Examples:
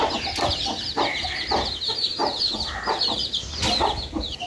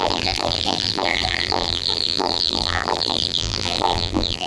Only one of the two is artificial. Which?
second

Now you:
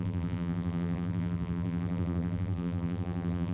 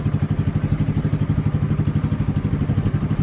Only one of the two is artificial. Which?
first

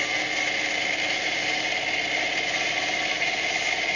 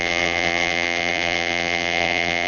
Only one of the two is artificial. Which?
second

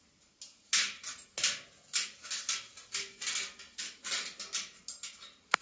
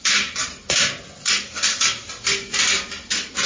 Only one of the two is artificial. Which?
second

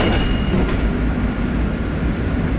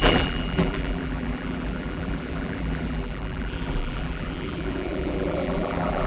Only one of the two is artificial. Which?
second